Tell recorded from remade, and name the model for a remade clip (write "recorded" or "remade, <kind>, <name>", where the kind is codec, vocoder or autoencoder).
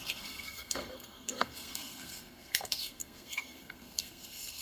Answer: remade, codec, SNAC